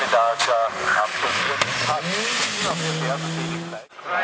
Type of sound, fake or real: real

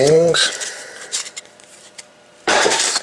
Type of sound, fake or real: fake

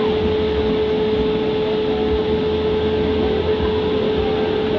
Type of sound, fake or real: real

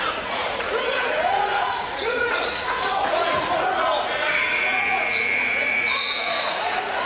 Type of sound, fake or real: fake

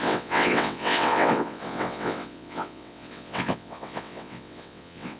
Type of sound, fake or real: fake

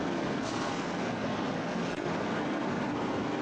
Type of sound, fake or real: fake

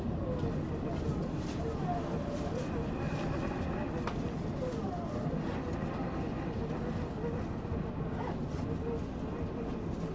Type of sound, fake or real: real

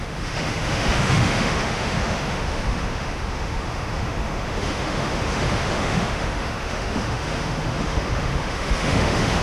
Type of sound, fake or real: fake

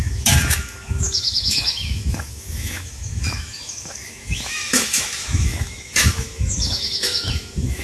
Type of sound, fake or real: fake